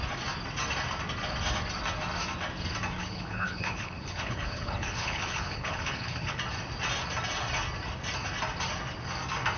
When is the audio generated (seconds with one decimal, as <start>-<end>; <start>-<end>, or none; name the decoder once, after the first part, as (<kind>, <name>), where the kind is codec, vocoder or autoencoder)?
3.0-6.4 (codec, HILCodec)